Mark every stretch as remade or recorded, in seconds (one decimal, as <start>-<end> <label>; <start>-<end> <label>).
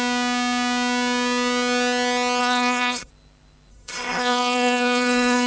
0.0-2.4 recorded; 2.4-3.1 remade; 3.1-3.7 recorded; 3.7-5.5 remade